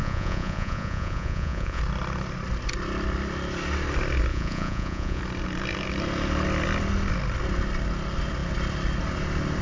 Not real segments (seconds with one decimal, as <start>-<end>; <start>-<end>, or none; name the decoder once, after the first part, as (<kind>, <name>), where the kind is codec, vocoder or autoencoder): 0.0-1.8 (vocoder, Vocos); 4.3-5.2